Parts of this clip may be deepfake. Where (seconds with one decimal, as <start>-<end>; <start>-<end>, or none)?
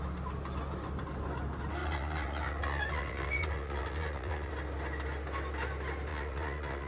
1.8-4.5; 6.1-6.9